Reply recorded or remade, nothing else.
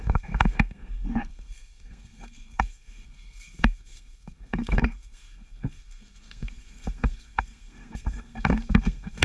remade